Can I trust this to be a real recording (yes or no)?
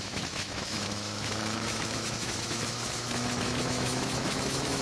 no